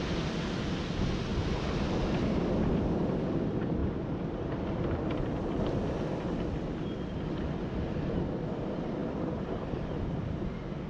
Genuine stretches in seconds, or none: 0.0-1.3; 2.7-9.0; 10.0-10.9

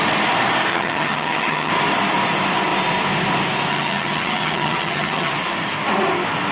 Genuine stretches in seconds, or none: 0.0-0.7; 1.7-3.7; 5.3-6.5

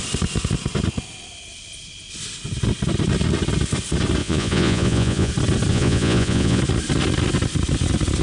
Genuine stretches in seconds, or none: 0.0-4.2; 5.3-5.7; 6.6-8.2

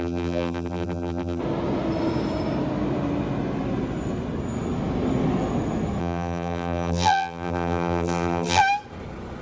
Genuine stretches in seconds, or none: 1.4-6.0; 8.6-9.4

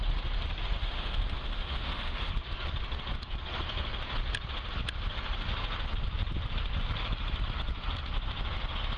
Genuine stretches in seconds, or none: 0.0-0.8; 2.3-9.0